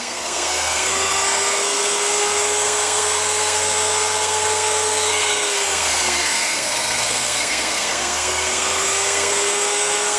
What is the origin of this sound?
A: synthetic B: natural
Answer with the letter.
A